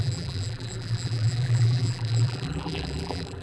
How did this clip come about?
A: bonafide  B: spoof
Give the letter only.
B